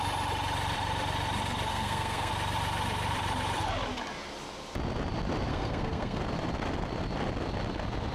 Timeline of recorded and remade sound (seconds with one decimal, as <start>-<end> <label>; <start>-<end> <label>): 0.0-1.7 recorded; 1.7-2.3 remade; 2.3-5.5 recorded; 5.5-6.2 remade; 6.2-8.1 recorded